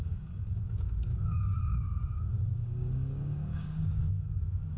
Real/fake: fake